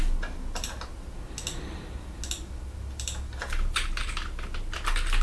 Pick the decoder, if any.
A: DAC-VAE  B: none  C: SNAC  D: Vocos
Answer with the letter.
B